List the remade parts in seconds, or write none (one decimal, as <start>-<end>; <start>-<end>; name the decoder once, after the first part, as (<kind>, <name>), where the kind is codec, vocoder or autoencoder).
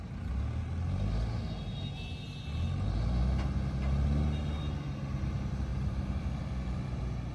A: 5.7-7.3 (vocoder, BigVGAN v2)